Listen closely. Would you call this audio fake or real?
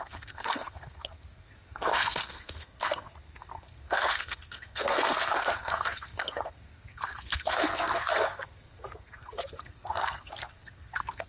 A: fake